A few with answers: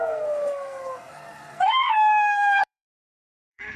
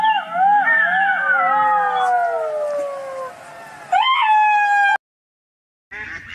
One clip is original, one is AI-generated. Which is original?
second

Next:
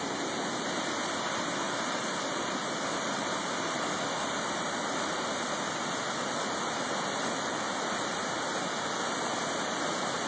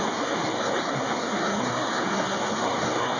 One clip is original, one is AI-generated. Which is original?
first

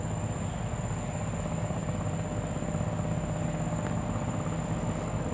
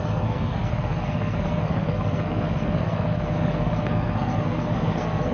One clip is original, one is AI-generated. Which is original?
first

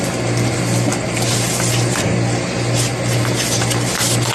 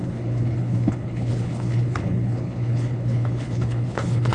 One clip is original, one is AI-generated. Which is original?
first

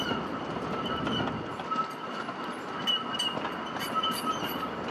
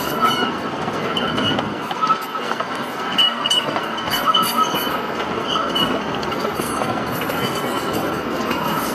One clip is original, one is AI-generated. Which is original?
first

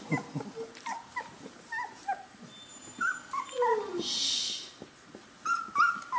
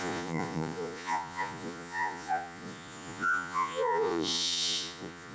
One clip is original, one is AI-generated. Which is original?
first